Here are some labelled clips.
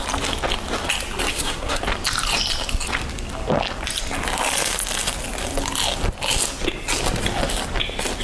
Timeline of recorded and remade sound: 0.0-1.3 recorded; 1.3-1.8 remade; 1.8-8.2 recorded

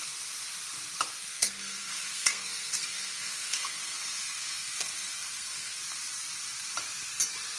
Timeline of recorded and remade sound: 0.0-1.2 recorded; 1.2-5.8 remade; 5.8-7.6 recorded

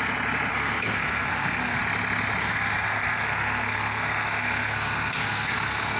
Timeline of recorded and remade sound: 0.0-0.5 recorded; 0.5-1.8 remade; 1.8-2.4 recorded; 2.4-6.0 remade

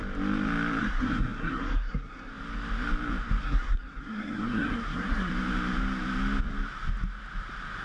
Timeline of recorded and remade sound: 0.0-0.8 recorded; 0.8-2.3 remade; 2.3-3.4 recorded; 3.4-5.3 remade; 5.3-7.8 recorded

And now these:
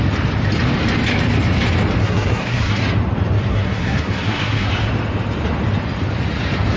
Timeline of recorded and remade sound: 0.0-2.0 recorded; 2.0-2.8 remade; 2.8-3.5 recorded; 3.5-4.7 remade; 4.7-6.8 recorded

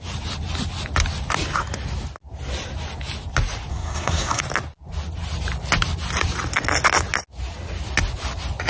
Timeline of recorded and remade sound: 0.0-3.7 recorded; 3.7-4.4 remade; 4.4-8.7 recorded

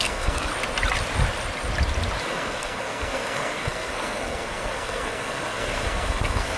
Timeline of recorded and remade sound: 0.0-0.5 remade; 0.5-2.2 recorded; 2.2-6.6 remade